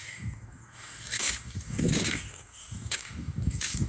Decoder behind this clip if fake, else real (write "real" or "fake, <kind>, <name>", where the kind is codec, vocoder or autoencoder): fake, codec, DAC